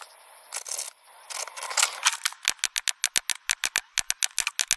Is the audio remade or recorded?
recorded